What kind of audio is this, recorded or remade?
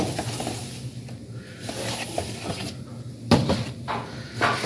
recorded